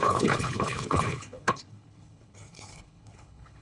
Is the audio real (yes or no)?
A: no